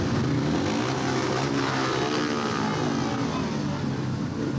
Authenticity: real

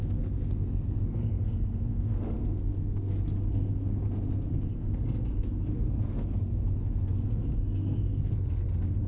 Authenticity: fake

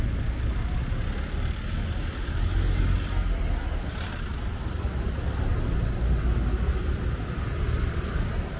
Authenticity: real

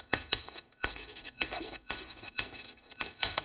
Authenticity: fake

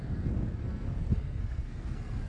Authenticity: fake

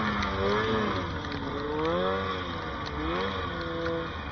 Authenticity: real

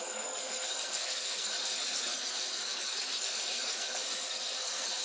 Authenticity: fake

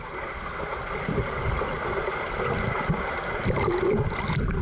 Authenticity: real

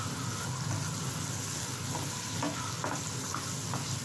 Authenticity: real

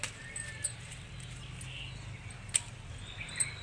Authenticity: real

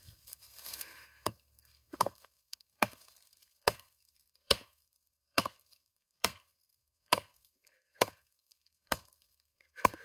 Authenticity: fake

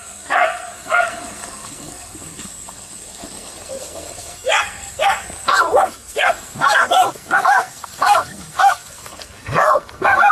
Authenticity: fake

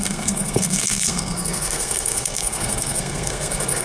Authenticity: fake